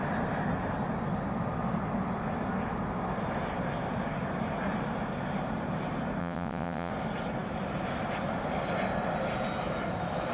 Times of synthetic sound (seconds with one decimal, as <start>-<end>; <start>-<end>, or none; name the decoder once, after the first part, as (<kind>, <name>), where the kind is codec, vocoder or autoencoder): 6.2-6.9 (vocoder, WaveNeXt)